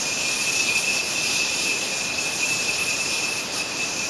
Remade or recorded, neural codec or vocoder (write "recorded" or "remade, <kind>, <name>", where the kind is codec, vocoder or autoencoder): remade, vocoder, BigVGAN v2